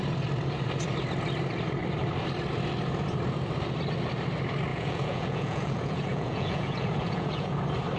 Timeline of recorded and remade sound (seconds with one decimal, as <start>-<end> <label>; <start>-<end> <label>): 0.0-4.7 recorded; 4.7-7.6 remade; 7.6-8.0 recorded